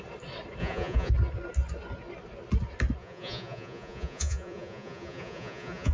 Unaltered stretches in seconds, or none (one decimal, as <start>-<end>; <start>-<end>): 0.0-0.6; 1.1-3.0